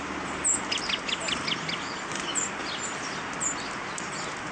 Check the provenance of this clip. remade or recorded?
recorded